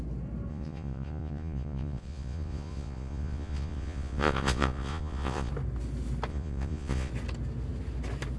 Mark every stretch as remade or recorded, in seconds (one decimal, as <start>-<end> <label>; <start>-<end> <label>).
0.0-0.5 recorded; 0.5-5.5 remade; 5.5-6.3 recorded; 6.3-7.1 remade; 7.1-8.4 recorded